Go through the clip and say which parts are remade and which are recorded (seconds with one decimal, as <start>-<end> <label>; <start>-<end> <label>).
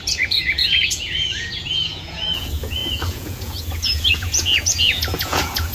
0.0-5.7 remade